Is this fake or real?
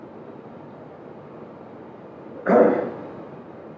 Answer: real